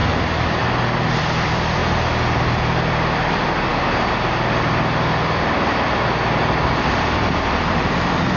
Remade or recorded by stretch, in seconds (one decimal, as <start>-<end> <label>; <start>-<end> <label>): 0.0-1.2 recorded; 1.2-1.8 remade; 1.8-2.6 recorded; 2.6-3.7 remade; 3.7-6.4 recorded; 6.4-8.4 remade

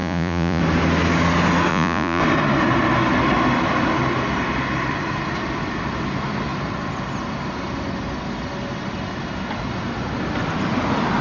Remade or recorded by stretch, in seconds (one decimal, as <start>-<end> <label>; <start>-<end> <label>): 0.0-0.6 remade; 0.6-1.7 recorded; 1.7-2.2 remade; 2.2-11.2 recorded

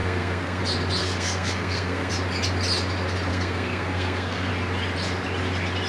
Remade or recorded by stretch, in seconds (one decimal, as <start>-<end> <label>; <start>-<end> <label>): 0.0-0.6 remade; 0.6-1.0 recorded; 1.0-2.1 remade; 2.1-3.3 recorded; 3.3-4.5 remade; 4.5-5.9 recorded

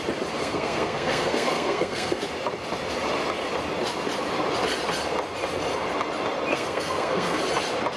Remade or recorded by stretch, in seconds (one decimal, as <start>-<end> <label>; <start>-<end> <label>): 0.0-0.4 recorded; 0.4-2.2 remade; 2.2-6.5 recorded; 6.5-7.4 remade; 7.4-8.0 recorded